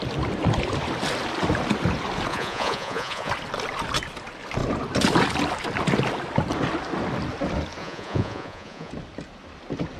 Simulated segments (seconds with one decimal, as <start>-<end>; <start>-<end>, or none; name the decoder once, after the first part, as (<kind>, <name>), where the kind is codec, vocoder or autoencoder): 2.3-3.3 (vocoder, Vocos); 7.8-8.9